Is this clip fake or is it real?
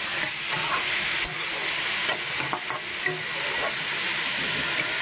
real